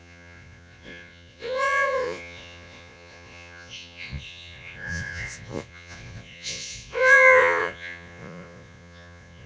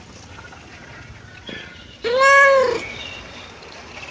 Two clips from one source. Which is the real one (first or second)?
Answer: second